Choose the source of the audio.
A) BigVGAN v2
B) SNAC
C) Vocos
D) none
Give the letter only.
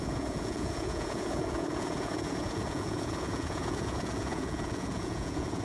C